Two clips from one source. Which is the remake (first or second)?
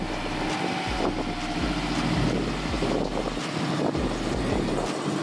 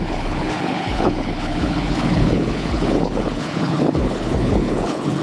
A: second